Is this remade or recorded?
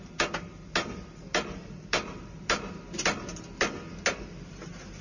recorded